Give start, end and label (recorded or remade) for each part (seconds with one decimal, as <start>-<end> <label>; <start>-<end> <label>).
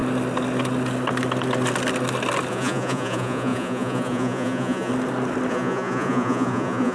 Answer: 0.0-2.5 recorded; 2.5-4.9 remade; 4.9-5.5 recorded; 5.5-6.9 remade